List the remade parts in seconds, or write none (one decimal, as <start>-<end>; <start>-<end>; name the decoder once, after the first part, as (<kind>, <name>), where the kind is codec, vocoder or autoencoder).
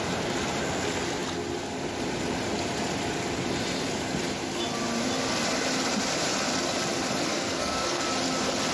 7.3-8.0 (codec, SNAC)